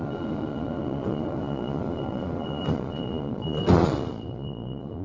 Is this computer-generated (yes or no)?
yes